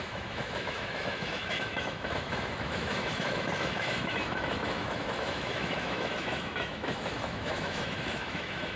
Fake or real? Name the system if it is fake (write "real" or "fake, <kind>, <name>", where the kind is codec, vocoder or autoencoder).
fake, autoencoder, DAC-VAE